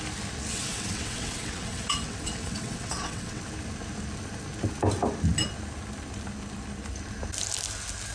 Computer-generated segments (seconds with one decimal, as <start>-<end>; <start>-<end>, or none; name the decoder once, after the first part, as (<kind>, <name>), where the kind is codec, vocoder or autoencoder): 0.5-3.4 (vocoder, WaveNeXt)